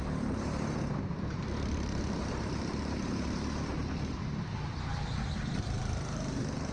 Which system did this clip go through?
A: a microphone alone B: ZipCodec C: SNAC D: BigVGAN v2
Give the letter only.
D